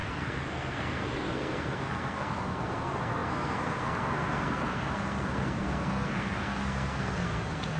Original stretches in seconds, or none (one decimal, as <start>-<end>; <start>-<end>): none